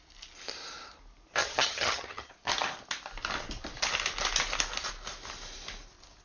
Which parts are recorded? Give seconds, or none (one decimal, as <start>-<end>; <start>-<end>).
0.0-1.4; 2.3-6.2